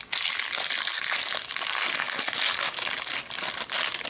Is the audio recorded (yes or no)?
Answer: yes